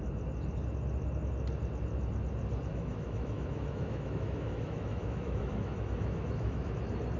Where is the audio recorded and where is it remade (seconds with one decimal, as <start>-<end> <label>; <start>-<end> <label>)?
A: 0.0-2.7 recorded; 2.7-6.7 remade; 6.7-7.2 recorded